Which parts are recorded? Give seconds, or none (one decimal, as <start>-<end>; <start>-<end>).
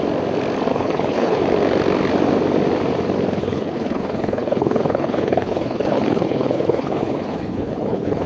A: 0.0-0.7; 1.4-3.4